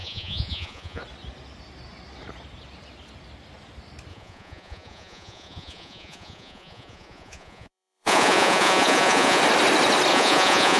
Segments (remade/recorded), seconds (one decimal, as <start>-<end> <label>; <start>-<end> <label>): 0.0-1.0 remade; 1.0-4.1 recorded; 4.1-9.4 remade; 9.4-10.1 recorded; 10.1-10.8 remade